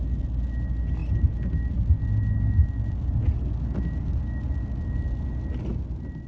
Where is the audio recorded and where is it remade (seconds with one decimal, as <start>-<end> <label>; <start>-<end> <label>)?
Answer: 0.0-6.3 recorded